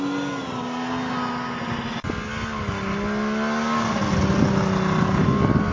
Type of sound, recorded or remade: recorded